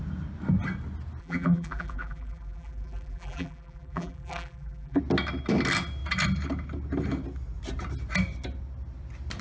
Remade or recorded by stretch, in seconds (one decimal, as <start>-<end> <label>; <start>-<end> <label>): 0.0-1.2 recorded; 1.2-5.0 remade; 5.0-9.4 recorded